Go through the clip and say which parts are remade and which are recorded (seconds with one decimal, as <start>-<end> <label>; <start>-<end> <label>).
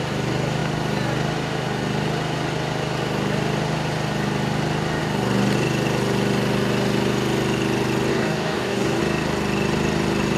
0.0-8.1 recorded; 8.1-9.0 remade; 9.0-10.4 recorded